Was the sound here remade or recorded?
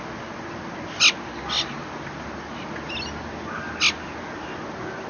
recorded